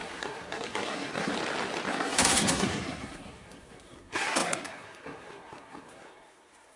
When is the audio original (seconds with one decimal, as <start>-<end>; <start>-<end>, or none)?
1.3-1.9